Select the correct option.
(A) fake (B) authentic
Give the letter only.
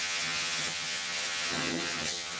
A